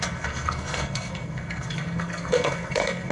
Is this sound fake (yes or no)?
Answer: yes